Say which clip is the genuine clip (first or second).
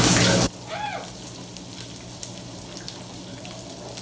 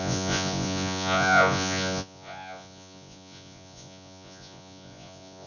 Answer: first